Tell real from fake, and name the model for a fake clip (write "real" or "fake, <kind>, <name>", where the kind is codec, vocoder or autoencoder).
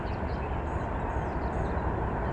real